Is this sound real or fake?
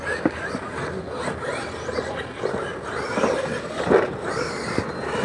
real